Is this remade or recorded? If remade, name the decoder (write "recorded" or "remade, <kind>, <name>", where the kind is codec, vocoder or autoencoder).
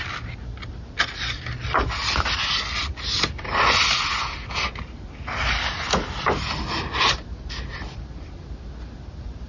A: recorded